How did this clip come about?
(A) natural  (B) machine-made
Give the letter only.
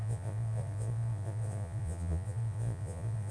B